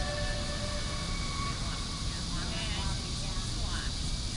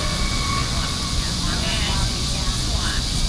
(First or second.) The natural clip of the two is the first